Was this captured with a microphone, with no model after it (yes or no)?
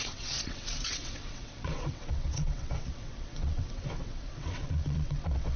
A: no